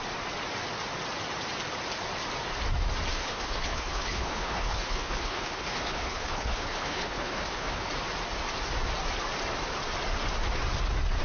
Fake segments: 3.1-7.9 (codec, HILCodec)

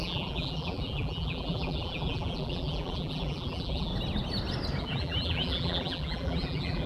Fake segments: 0.0-3.9 (vocoder, BigVGAN v2); 4.8-6.9

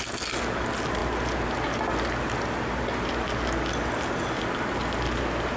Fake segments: 1.0-3.1 (vocoder, BigVGAN v2)

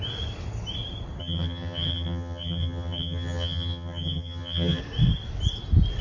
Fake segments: 1.2-4.8 (vocoder, HiFi-GAN)

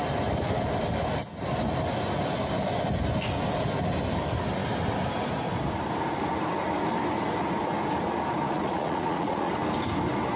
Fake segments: 8.4-9.5 (vocoder, Vocos)

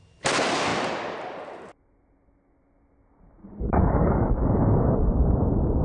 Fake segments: 3.4-5.1 (codec, DAC)